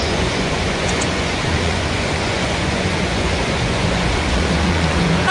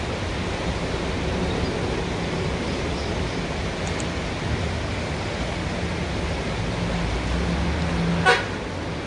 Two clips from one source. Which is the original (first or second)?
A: second